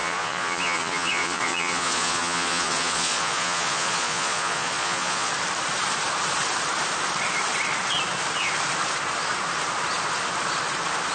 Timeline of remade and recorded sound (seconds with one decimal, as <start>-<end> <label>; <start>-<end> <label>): 0.0-5.3 remade; 5.3-11.1 recorded